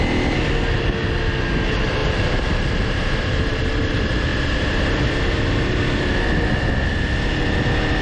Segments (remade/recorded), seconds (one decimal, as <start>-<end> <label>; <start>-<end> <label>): 0.0-8.0 recorded